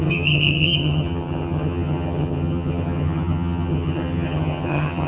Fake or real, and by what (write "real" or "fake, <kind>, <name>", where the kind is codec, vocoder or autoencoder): fake, vocoder, HiFi-GAN